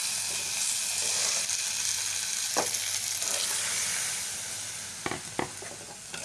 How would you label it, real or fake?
real